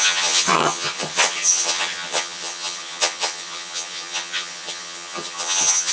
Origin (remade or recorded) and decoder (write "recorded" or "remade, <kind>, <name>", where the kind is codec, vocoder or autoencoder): remade, vocoder, HiFi-GAN